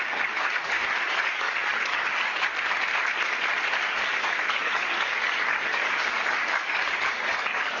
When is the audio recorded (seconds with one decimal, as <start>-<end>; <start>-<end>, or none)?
2.5-3.8

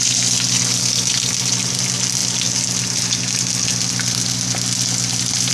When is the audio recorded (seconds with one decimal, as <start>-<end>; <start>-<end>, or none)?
0.0-5.5

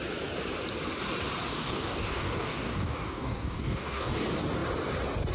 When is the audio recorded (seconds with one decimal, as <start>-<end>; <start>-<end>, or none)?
0.0-1.5; 4.1-5.3